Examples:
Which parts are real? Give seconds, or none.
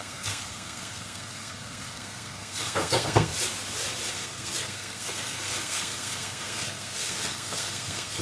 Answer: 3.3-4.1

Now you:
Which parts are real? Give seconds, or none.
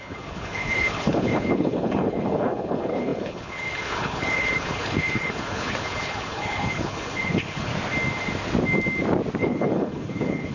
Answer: 7.7-9.4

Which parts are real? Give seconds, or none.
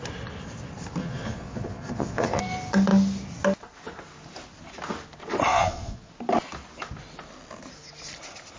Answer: 0.0-1.0; 2.4-5.5; 6.1-8.6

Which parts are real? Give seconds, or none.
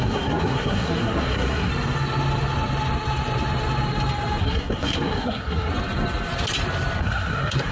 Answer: 1.7-4.4; 5.7-7.0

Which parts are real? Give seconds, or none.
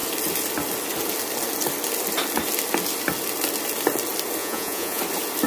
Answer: 0.0-4.4; 5.0-5.5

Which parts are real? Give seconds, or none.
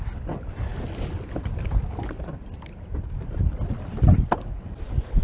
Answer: 0.0-5.2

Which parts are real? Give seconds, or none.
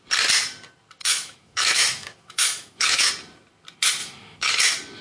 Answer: 0.0-1.0; 3.1-4.0; 4.5-5.0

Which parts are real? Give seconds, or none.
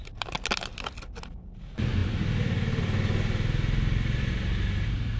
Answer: 0.0-5.2